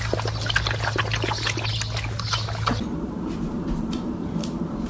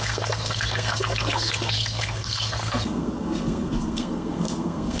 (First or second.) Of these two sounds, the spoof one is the second